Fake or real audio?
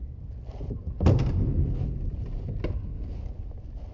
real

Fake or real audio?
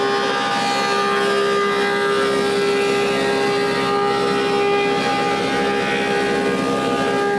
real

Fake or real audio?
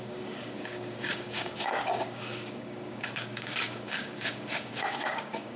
fake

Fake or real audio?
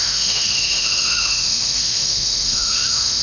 fake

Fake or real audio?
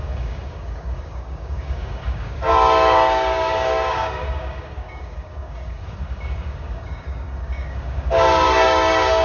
fake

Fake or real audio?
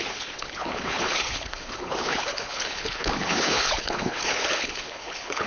fake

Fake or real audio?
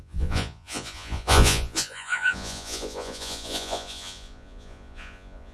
fake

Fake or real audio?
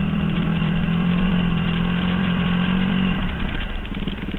fake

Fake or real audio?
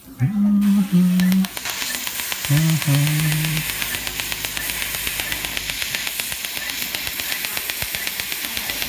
real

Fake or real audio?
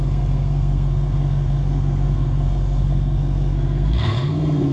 fake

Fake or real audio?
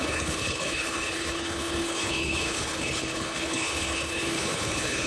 fake